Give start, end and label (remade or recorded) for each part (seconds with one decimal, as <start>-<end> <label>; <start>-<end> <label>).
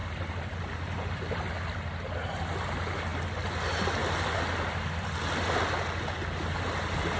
0.0-7.2 recorded